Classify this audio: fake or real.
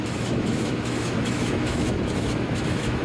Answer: fake